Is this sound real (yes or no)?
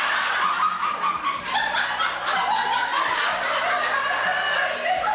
yes